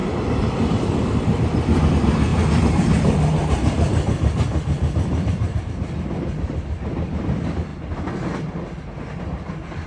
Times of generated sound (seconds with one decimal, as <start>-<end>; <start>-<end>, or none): 0.0-1.9; 2.3-5.6